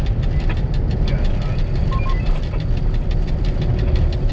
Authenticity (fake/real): real